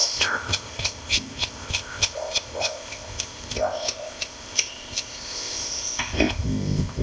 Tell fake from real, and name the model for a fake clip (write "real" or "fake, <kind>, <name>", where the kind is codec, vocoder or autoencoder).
fake, codec, ZipCodec